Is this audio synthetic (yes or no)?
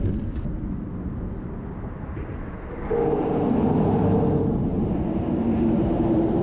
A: no